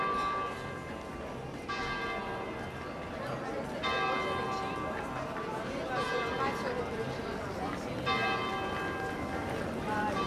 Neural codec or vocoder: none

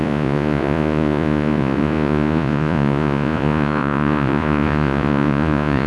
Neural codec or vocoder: vocoder, Vocos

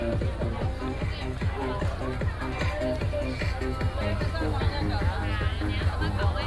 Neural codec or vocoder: none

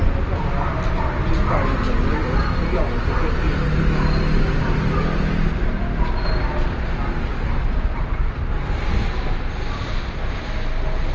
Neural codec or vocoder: none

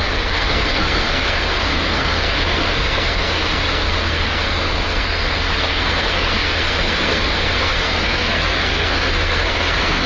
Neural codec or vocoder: codec, SNAC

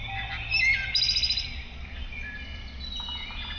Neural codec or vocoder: none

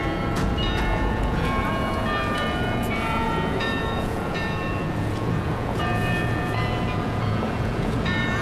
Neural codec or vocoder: vocoder, Vocos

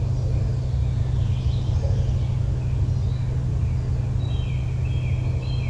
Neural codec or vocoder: none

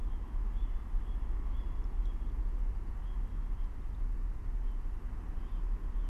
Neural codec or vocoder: none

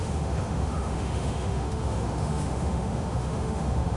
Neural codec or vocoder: autoencoder, DAC-VAE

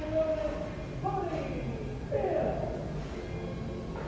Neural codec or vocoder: none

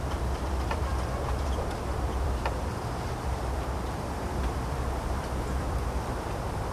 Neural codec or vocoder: vocoder, BigVGAN v2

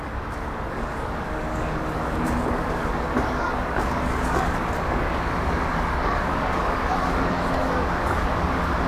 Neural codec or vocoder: codec, DAC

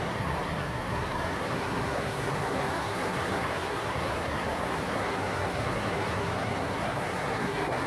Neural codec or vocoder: codec, SNAC